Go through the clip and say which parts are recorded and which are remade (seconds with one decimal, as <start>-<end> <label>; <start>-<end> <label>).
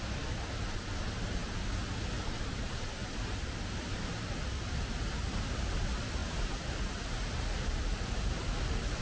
0.0-9.0 recorded